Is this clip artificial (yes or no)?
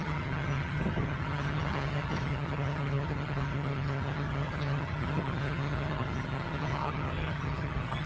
yes